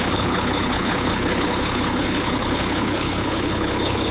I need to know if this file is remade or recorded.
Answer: remade